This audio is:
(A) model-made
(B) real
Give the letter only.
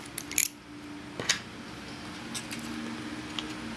B